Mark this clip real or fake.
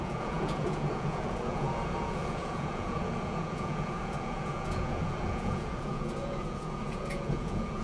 fake